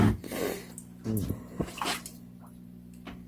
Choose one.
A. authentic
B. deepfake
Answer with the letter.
A